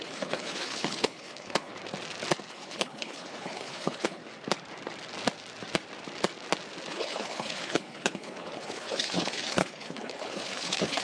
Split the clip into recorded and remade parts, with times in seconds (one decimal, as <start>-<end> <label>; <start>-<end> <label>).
0.0-1.7 remade; 1.7-2.5 recorded; 2.5-4.2 remade; 4.2-6.9 recorded; 6.9-11.0 remade